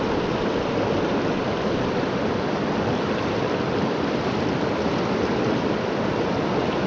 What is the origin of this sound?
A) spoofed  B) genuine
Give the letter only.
B